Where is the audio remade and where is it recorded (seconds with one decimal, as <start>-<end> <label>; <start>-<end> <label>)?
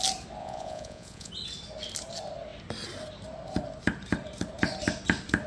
0.0-0.4 recorded; 0.4-1.3 remade; 1.3-5.5 recorded